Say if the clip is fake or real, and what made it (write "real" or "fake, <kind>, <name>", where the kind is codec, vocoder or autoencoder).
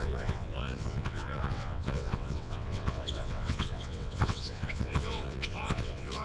fake, vocoder, WaveNeXt